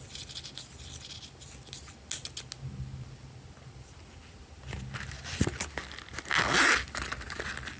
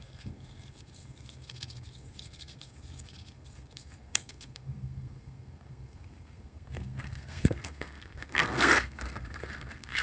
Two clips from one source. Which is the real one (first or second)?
first